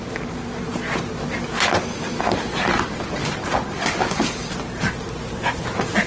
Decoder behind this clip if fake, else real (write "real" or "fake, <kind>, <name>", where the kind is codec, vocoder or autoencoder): real